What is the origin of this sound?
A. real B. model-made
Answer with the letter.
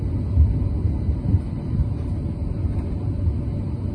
A